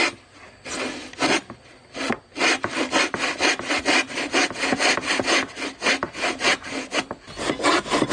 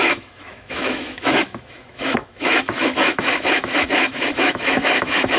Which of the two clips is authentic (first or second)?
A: first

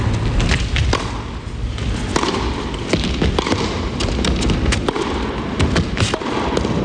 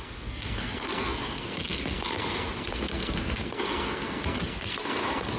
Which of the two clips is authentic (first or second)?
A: first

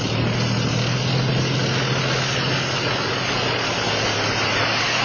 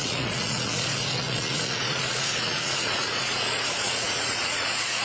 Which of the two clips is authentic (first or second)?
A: first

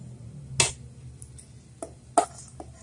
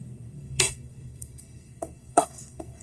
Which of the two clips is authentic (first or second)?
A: first